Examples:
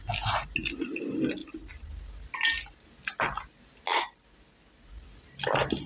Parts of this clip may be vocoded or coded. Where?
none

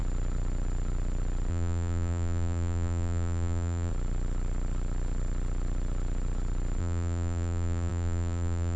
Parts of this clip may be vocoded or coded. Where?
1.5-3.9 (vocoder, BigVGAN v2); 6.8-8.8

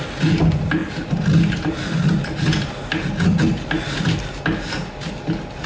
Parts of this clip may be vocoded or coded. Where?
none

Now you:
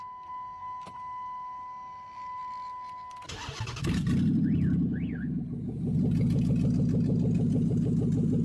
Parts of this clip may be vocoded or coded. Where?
none

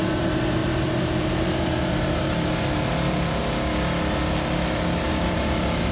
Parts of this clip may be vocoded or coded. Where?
0.0-3.4 (vocoder, BigVGAN v2); 5.1-5.9

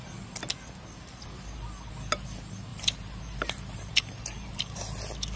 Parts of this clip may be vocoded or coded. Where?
2.7-4.8 (vocoder, BigVGAN v2)

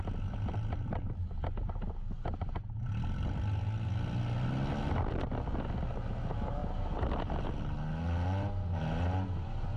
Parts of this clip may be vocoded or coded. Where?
none

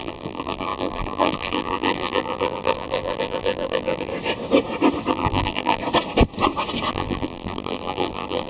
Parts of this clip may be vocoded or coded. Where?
0.0-4.1 (vocoder, BigVGAN v2); 5.1-5.8; 6.9-8.5